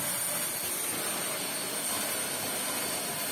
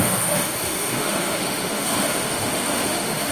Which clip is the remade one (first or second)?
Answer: second